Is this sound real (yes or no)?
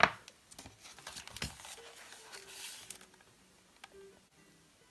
yes